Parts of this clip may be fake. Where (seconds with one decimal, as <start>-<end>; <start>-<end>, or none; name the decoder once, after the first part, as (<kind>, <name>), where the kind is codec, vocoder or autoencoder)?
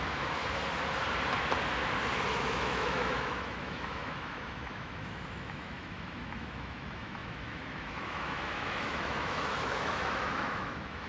0.0-0.4 (autoencoder, DAC-VAE); 2.4-11.1